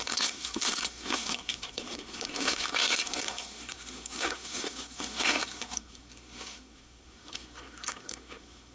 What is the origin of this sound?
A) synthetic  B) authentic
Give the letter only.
A